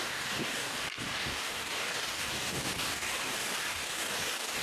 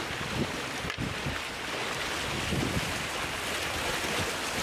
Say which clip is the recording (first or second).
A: second